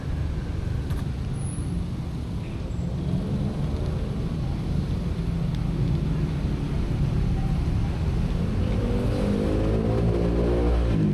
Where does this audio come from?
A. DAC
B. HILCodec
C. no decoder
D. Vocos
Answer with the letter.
C